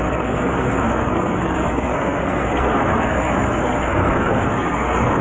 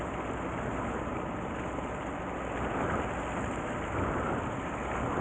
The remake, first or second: first